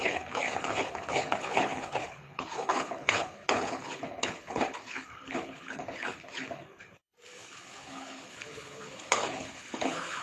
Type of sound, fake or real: fake